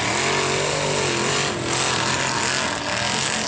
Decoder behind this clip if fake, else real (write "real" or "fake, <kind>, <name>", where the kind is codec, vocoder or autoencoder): real